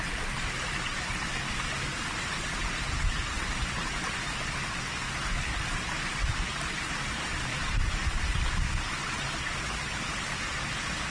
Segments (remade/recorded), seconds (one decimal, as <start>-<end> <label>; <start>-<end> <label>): 0.0-7.5 recorded; 7.5-8.8 remade; 8.8-11.1 recorded